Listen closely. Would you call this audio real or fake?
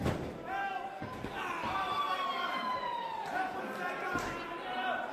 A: real